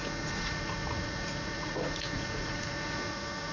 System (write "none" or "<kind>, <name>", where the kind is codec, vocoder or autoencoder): vocoder, Vocos